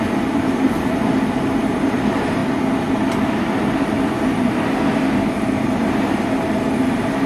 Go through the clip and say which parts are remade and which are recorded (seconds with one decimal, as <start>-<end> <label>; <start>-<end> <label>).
0.0-2.4 remade; 2.4-5.3 recorded; 5.3-7.3 remade